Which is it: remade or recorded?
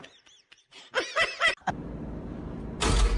recorded